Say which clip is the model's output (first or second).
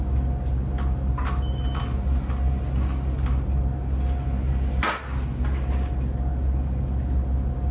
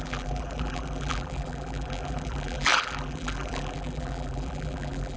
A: second